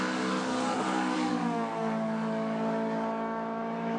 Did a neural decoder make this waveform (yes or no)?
yes